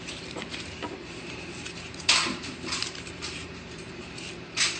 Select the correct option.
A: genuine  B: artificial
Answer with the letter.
B